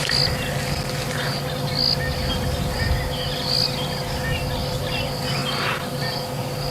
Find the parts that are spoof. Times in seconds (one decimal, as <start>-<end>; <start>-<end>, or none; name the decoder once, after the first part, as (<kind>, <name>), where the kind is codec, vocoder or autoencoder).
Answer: none